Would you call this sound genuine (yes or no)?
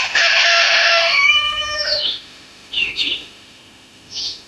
no